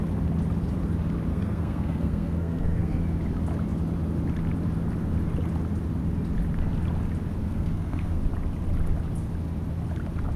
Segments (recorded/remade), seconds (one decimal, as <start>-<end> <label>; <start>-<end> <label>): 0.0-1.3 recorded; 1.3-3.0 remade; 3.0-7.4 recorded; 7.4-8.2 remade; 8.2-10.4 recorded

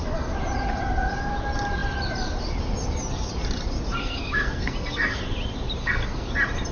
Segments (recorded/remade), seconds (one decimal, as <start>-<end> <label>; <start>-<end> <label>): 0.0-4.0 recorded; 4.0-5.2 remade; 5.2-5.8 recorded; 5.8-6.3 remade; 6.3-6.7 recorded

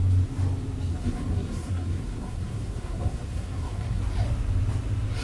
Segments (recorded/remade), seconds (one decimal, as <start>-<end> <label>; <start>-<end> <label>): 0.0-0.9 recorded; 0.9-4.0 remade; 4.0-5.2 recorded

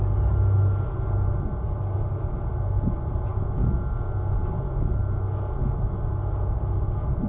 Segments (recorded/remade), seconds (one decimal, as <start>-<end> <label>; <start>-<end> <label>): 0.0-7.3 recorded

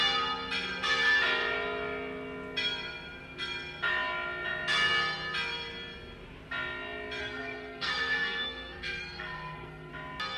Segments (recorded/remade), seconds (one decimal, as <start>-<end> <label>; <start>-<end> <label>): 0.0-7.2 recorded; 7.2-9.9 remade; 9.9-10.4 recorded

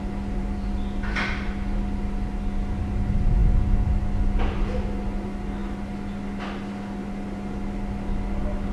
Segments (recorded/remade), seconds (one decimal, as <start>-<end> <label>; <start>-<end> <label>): 0.0-8.7 recorded

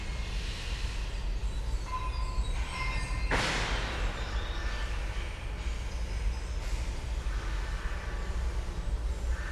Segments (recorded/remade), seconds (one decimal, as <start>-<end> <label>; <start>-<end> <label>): 0.0-9.5 recorded

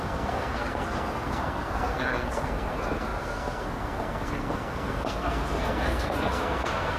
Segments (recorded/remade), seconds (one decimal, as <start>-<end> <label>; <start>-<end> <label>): 0.0-7.0 remade